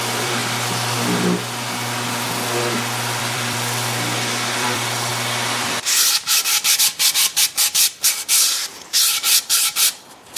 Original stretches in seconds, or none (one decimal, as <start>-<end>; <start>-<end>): 0.4-3.2; 5.1-8.9